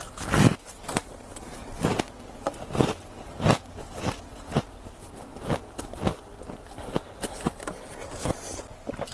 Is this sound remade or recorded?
recorded